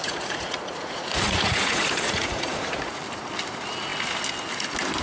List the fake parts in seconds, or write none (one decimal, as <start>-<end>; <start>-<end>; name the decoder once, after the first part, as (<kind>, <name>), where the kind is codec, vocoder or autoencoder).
0.0-3.0 (vocoder, Vocos)